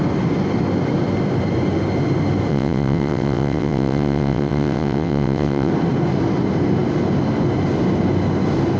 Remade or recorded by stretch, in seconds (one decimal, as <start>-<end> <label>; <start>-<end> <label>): 0.0-2.5 recorded; 2.5-5.7 remade; 5.7-8.8 recorded